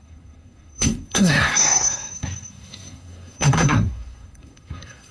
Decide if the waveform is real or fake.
fake